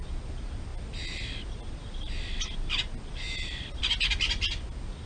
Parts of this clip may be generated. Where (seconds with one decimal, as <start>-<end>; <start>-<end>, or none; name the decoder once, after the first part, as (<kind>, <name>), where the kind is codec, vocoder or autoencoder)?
none